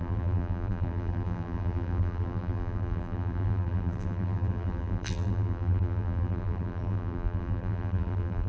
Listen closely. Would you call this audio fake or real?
fake